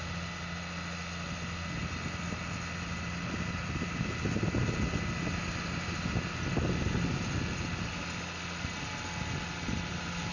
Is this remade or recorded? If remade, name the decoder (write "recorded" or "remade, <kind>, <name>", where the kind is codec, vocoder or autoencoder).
recorded